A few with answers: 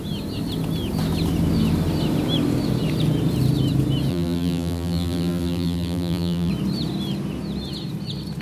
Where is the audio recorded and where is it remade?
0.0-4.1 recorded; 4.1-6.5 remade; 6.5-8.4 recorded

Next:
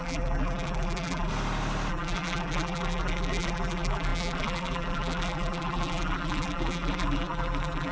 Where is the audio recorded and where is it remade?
0.0-1.3 remade; 1.3-1.9 recorded; 1.9-7.9 remade

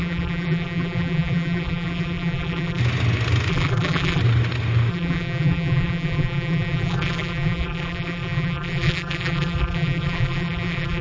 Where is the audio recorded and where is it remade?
0.0-2.8 remade; 2.8-3.5 recorded; 3.5-4.2 remade; 4.2-4.9 recorded; 4.9-11.0 remade

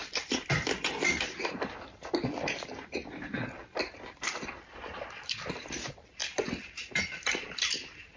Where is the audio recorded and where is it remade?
0.0-1.4 recorded; 1.4-3.0 remade; 3.0-3.8 recorded; 3.8-6.2 remade; 6.2-7.0 recorded; 7.0-8.2 remade

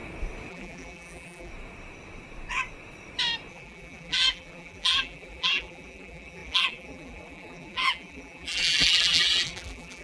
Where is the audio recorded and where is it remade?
0.0-0.5 recorded; 0.5-1.5 remade; 1.5-3.5 recorded; 3.5-10.0 remade

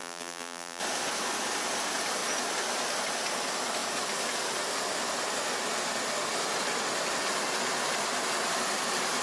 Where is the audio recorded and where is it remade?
0.0-0.8 remade; 0.8-9.2 recorded

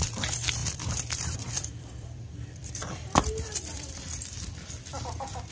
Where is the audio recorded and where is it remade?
0.0-5.5 remade

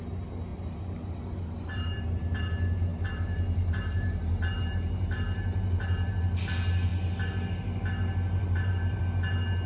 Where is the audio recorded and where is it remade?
0.0-0.5 recorded; 0.5-2.0 remade; 2.0-2.9 recorded; 2.9-6.2 remade; 6.2-8.4 recorded; 8.4-9.0 remade; 9.0-9.7 recorded